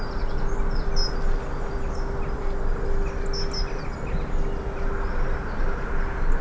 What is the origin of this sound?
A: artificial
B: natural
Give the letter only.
B